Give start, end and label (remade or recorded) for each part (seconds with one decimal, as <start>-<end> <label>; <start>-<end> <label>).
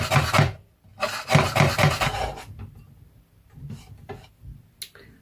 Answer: 0.0-5.2 recorded